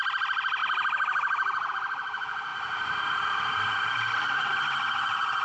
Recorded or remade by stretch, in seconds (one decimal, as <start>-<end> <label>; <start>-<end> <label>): 0.0-2.5 recorded; 2.5-4.5 remade; 4.5-5.4 recorded